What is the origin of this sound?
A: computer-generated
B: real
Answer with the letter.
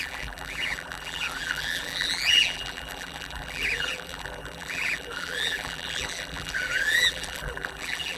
A